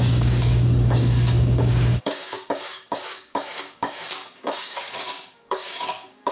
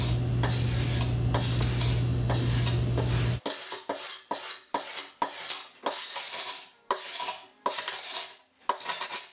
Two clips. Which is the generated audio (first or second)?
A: first